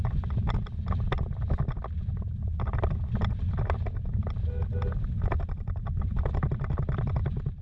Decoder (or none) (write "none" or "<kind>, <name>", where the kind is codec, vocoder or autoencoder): none